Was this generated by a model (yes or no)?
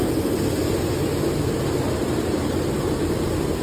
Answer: no